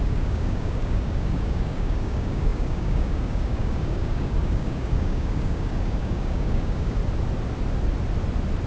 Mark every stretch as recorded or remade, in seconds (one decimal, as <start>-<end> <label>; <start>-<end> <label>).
0.0-7.0 remade; 7.0-8.7 recorded